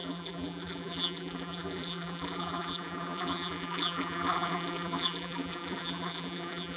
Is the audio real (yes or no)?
no